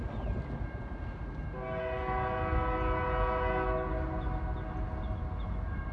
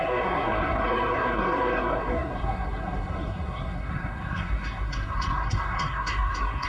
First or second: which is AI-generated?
second